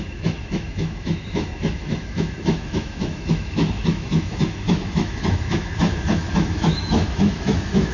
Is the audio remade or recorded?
remade